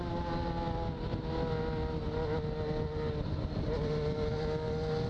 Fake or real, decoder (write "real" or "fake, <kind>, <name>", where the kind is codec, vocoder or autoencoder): real